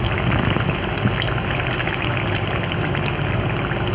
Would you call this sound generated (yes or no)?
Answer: no